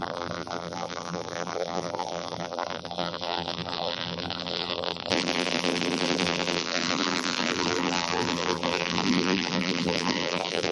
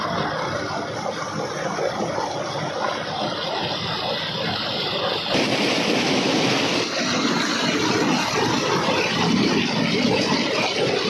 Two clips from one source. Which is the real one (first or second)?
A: second